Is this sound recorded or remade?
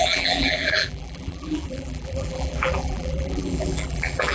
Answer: remade